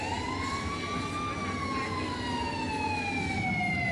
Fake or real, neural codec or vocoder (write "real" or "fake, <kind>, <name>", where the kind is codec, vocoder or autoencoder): real